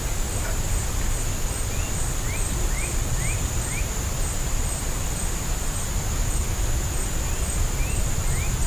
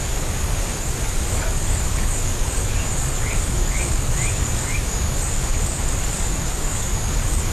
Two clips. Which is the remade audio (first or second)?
second